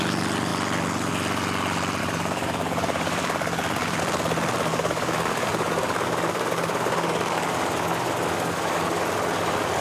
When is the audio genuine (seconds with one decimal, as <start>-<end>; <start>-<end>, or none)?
0.0-2.0; 4.0-4.7; 9.0-9.8